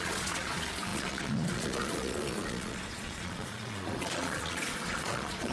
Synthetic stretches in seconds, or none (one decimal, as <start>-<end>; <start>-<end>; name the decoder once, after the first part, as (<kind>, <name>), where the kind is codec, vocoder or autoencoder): 0.0-5.5 (vocoder, Vocos)